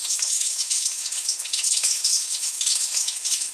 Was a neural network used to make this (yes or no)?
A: yes